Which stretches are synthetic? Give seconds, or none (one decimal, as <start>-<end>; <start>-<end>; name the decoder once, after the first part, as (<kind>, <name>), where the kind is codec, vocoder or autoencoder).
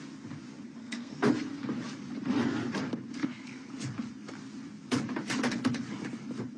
0.8-1.3 (codec, SNAC); 3.2-3.7